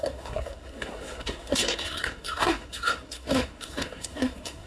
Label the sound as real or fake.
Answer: fake